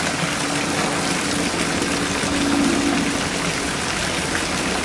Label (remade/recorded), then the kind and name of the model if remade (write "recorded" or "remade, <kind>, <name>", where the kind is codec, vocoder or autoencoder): recorded